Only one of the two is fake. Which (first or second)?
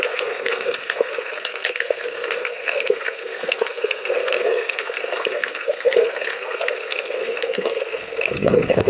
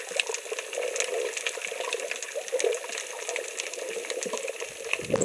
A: first